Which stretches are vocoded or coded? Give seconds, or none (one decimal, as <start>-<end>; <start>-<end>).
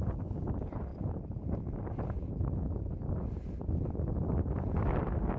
none